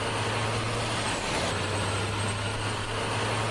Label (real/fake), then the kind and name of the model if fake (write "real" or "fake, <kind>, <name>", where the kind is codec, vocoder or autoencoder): real